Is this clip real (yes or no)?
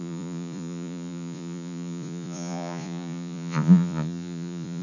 no